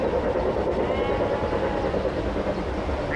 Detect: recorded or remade recorded